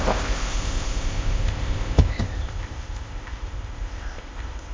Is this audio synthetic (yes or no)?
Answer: yes